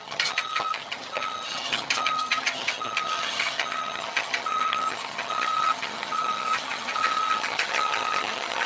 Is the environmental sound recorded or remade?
remade